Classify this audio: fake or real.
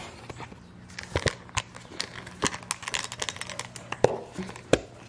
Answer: real